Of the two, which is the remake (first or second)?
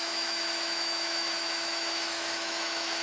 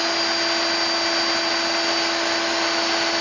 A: first